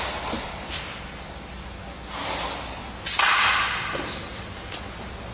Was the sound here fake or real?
real